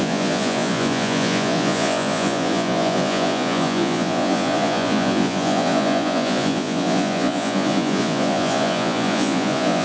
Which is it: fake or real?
fake